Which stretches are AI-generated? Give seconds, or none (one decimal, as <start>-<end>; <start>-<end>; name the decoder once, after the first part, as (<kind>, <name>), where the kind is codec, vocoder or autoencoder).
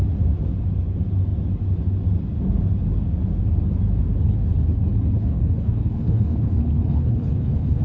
4.2-7.8 (codec, HILCodec)